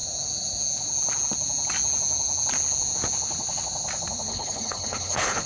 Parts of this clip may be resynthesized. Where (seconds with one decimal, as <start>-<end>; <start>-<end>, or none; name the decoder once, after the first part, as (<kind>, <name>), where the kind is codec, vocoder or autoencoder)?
4.3-5.5 (codec, HILCodec)